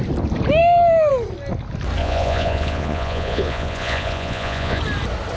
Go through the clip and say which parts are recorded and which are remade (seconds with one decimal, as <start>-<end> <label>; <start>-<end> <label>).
0.0-2.0 recorded; 2.0-4.8 remade; 4.8-5.4 recorded